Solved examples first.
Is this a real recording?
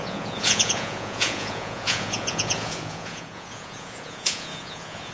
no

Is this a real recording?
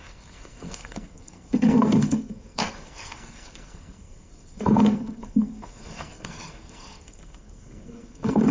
no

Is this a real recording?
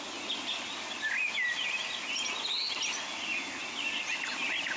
yes